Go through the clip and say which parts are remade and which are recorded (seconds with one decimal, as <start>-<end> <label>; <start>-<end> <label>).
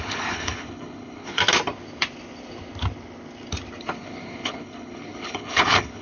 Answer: 0.0-1.4 remade; 1.4-3.8 recorded; 3.8-6.0 remade